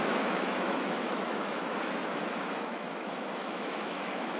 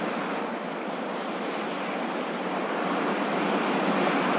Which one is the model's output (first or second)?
first